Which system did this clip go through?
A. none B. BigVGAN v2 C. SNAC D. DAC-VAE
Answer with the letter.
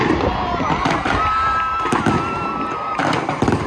A